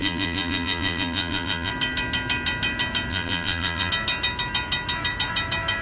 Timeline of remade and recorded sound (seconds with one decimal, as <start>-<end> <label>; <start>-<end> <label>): 0.0-1.7 remade; 1.7-3.1 recorded; 3.1-3.9 remade; 3.9-5.8 recorded